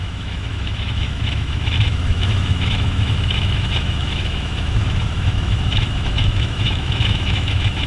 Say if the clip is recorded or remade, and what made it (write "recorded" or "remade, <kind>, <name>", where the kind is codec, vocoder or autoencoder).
remade, autoencoder, DAC-VAE